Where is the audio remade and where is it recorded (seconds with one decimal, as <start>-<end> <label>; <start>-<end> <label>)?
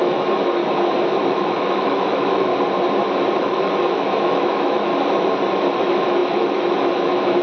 0.0-0.6 remade; 0.6-1.2 recorded; 1.2-2.5 remade; 2.5-3.4 recorded; 3.4-4.9 remade; 4.9-5.6 recorded; 5.6-7.4 remade